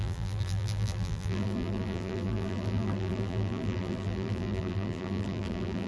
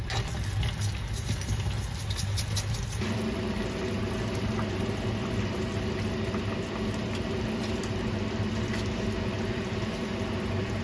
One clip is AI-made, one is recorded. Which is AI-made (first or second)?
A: first